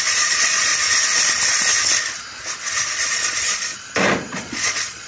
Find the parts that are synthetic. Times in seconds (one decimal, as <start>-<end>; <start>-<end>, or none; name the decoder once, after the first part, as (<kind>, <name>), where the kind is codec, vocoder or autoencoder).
0.0-0.7 (vocoder, Vocos); 3.1-3.7; 4.2-5.1